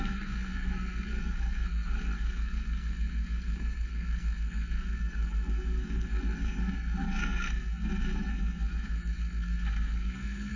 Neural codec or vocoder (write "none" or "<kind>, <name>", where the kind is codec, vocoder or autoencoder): codec, SNAC